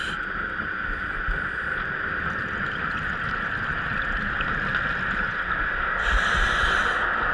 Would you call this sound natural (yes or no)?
yes